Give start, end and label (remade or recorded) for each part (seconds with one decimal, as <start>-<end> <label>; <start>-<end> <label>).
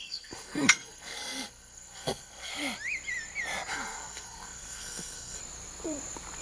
0.0-2.5 remade; 2.5-3.7 recorded; 3.7-5.4 remade; 5.4-6.4 recorded